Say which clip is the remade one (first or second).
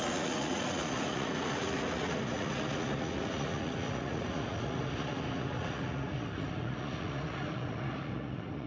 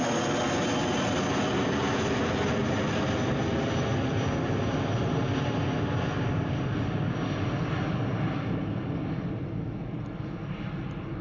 first